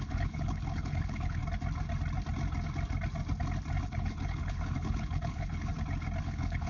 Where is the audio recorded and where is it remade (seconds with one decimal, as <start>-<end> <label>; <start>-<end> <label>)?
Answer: 0.0-1.4 remade; 1.4-3.8 recorded; 3.8-5.7 remade; 5.7-6.2 recorded; 6.2-6.7 remade

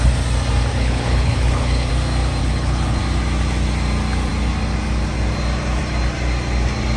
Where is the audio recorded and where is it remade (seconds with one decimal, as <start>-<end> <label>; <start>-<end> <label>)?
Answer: 0.0-0.7 recorded; 0.7-1.9 remade; 1.9-2.4 recorded; 2.4-3.0 remade; 3.0-7.0 recorded

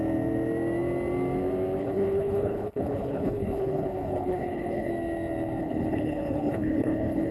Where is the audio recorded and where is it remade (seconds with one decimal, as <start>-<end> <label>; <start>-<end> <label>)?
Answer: 0.0-1.8 recorded; 1.8-4.9 remade; 4.9-5.6 recorded; 5.6-7.3 remade

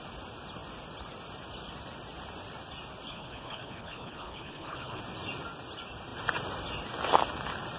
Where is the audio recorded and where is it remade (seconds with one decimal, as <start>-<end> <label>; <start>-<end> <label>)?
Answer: 0.0-3.1 recorded; 3.1-5.0 remade; 5.0-7.8 recorded

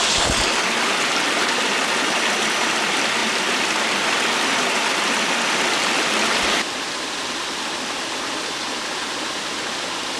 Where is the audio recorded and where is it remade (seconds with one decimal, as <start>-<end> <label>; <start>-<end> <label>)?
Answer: 0.0-10.2 recorded

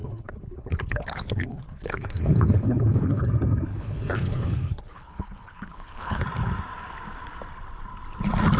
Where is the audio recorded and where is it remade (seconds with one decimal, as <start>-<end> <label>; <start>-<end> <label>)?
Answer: 0.0-3.3 remade; 3.3-3.7 recorded; 3.7-6.2 remade; 6.2-8.6 recorded